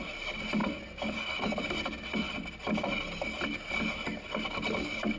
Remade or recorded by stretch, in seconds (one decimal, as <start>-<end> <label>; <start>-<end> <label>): 0.0-5.2 recorded